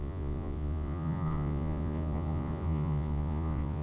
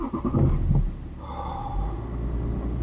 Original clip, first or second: second